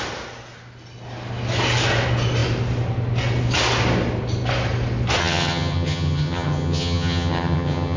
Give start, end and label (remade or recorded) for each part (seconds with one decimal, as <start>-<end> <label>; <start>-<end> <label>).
0.0-5.2 recorded; 5.2-8.0 remade